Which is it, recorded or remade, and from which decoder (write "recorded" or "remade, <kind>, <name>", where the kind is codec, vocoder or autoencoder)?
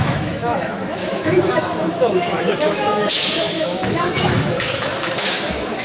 remade, autoencoder, DAC-VAE